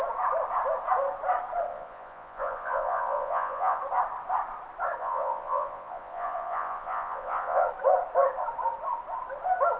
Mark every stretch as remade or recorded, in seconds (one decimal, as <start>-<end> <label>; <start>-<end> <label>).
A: 0.0-1.7 recorded; 1.7-3.8 remade; 3.8-5.0 recorded; 5.0-7.7 remade; 7.7-9.8 recorded